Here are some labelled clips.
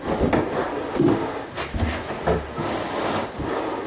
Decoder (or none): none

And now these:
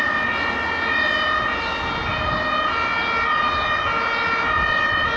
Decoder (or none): none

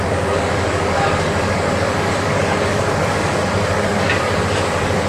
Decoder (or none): codec, DAC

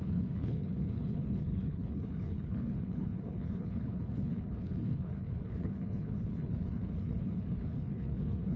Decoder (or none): codec, HILCodec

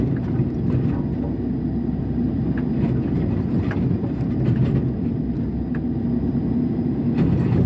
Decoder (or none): none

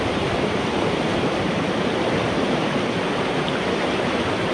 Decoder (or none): vocoder, BigVGAN v2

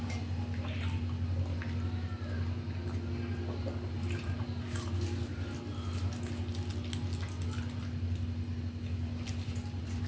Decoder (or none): none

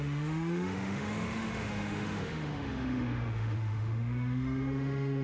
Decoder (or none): autoencoder, DAC-VAE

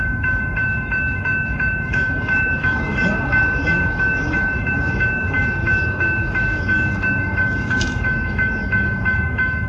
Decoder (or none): autoencoder, DAC-VAE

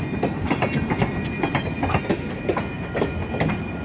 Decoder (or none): none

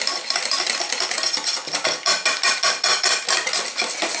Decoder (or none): none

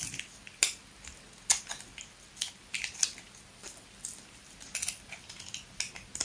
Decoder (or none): none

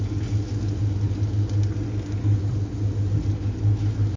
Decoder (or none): none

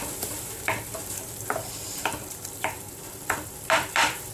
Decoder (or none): vocoder, BigVGAN v2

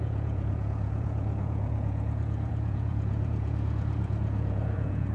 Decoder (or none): vocoder, Vocos